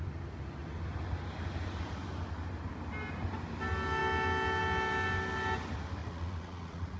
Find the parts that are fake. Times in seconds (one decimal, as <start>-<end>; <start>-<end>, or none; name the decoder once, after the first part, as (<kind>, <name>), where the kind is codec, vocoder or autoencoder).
6.0-7.0 (vocoder, Vocos)